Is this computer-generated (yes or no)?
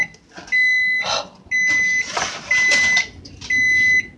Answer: no